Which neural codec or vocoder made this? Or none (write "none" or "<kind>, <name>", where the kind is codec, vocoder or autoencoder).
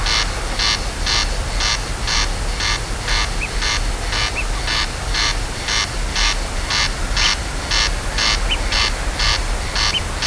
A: none